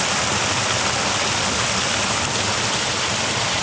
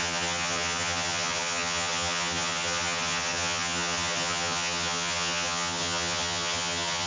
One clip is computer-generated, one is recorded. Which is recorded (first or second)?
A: first